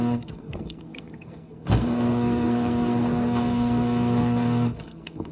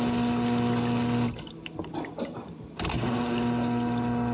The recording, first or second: second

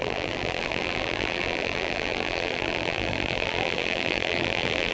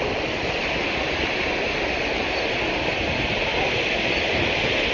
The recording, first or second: second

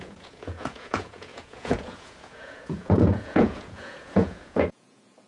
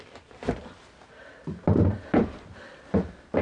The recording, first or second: second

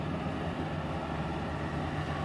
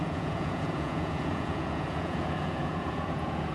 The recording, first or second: first